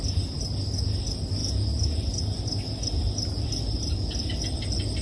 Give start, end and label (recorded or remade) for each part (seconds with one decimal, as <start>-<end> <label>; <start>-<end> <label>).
0.0-5.0 recorded